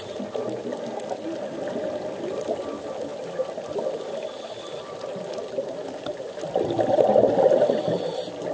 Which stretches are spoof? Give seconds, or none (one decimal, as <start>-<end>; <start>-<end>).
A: none